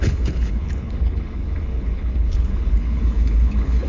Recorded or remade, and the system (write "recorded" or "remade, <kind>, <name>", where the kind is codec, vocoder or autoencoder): remade, codec, HILCodec